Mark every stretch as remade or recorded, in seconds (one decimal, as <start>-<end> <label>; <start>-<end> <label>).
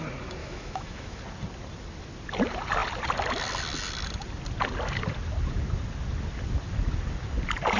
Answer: 0.0-0.4 recorded; 0.4-1.2 remade; 1.2-7.8 recorded